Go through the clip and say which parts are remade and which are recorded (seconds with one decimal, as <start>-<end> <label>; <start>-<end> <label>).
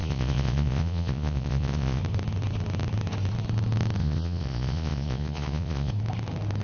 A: 0.0-2.0 remade; 2.0-4.0 recorded; 4.0-5.9 remade; 5.9-6.6 recorded